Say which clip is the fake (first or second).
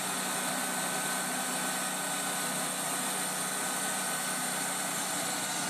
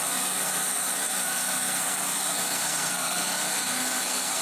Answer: second